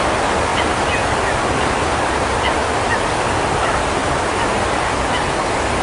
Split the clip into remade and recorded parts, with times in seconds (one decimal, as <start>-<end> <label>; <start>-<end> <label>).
0.0-5.8 recorded